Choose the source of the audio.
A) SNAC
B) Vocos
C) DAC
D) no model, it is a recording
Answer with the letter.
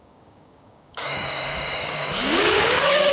C